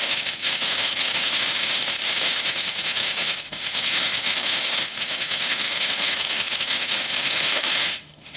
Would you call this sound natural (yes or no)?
no